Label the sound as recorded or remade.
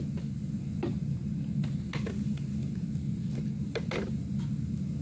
recorded